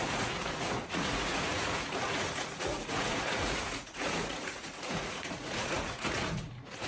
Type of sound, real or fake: fake